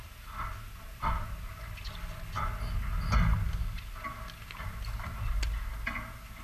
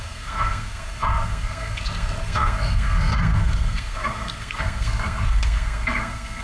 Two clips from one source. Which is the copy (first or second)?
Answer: second